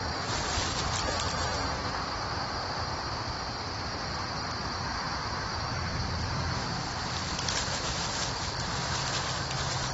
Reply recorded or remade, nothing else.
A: recorded